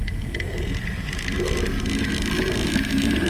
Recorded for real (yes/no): yes